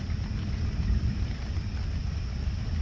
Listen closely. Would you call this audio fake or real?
real